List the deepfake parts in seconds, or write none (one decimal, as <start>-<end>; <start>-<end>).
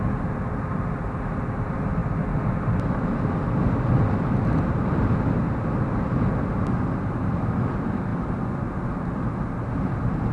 none